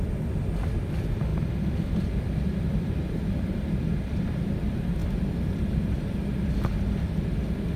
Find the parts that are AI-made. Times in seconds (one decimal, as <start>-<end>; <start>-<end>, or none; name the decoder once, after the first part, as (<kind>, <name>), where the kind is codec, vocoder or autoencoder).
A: none